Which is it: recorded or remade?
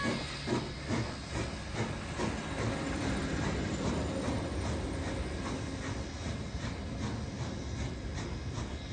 recorded